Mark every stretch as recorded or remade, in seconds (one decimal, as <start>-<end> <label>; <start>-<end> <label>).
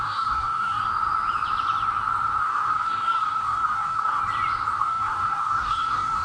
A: 0.0-0.8 remade; 0.8-2.4 recorded; 2.4-4.2 remade; 4.2-4.8 recorded; 4.8-6.2 remade